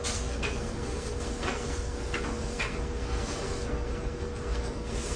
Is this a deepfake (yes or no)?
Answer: yes